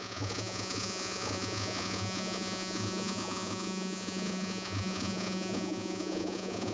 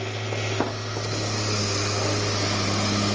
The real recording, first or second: second